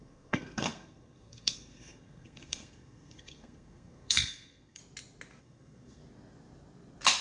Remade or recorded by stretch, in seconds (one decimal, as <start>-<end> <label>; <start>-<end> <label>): 0.0-4.8 remade; 4.8-5.4 recorded; 5.4-6.0 remade; 6.0-7.2 recorded

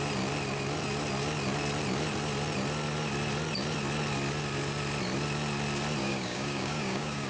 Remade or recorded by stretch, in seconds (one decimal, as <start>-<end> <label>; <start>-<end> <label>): 0.0-6.0 recorded; 6.0-7.3 remade

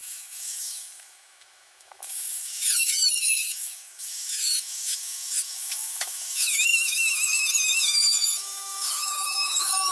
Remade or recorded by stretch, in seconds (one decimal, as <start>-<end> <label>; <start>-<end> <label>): 0.0-9.9 remade

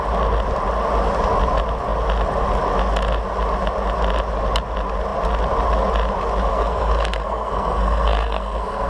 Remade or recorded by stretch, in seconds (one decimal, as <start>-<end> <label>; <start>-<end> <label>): 0.0-6.5 recorded; 6.5-8.9 remade

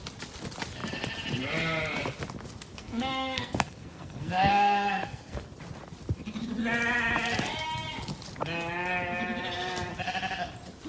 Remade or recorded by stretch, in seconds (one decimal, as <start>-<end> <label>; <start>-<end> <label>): 0.0-2.7 recorded; 2.7-5.5 remade; 5.5-10.9 recorded

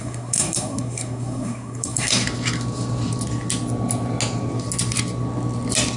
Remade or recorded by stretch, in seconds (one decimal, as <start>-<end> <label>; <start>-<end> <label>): 0.0-2.1 remade; 2.1-6.0 recorded

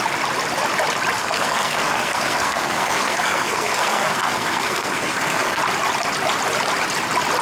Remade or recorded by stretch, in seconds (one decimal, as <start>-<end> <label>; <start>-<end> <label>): 0.0-1.2 recorded; 1.2-5.6 remade; 5.6-7.4 recorded